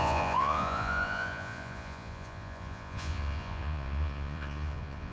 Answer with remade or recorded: remade